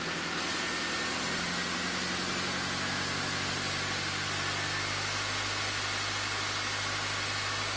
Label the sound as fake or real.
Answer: real